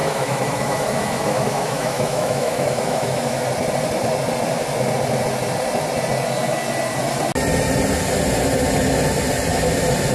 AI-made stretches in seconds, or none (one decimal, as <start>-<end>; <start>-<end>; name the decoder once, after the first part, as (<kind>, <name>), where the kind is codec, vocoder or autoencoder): 0.0-3.4 (autoencoder, DAC-VAE)